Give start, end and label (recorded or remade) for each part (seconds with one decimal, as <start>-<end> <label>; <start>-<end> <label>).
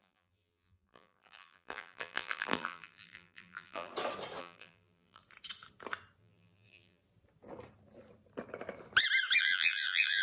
0.0-3.9 remade; 3.9-4.4 recorded; 4.4-5.2 remade; 5.2-6.2 recorded; 6.2-7.0 remade; 7.0-9.4 recorded; 9.4-10.2 remade